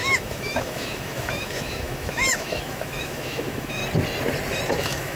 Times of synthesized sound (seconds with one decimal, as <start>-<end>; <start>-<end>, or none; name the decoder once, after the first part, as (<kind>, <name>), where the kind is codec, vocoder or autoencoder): 0.0-3.8 (autoencoder, DAC-VAE); 4.7-5.2